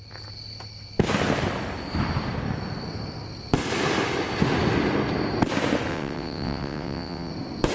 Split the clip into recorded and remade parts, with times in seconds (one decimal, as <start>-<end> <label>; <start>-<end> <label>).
0.0-5.9 recorded; 5.9-7.3 remade; 7.3-7.7 recorded